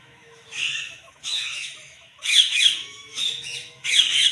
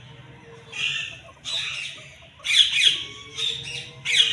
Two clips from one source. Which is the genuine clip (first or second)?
second